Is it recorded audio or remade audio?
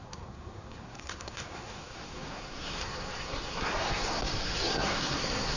remade